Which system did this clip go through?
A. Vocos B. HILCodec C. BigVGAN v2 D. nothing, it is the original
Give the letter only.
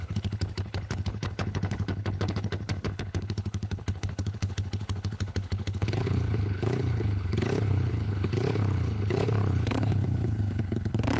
B